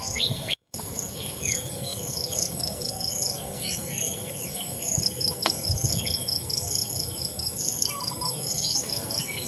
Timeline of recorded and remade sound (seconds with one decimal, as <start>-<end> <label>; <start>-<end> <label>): 0.0-9.5 remade